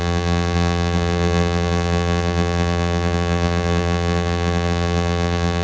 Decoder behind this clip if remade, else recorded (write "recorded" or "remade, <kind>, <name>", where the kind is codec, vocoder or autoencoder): remade, vocoder, BigVGAN v2